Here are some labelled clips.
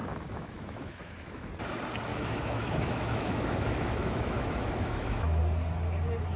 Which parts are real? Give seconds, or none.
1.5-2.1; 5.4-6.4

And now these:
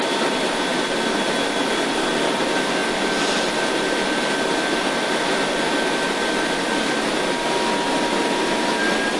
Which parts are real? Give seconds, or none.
0.0-9.2